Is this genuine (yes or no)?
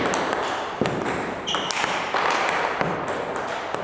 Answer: yes